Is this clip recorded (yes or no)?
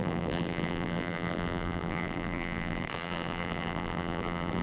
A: no